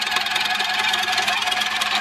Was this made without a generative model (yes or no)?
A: yes